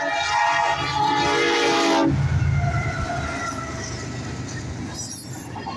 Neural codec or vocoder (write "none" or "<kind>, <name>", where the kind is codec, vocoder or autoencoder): none